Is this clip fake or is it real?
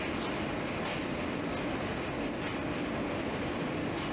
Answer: real